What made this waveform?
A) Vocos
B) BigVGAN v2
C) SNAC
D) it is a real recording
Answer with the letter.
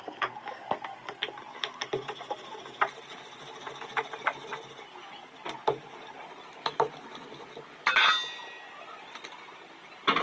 D